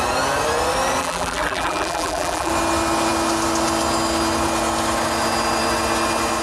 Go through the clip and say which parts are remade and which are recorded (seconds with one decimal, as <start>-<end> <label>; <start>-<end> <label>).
0.0-1.0 recorded; 1.0-2.5 remade; 2.5-6.4 recorded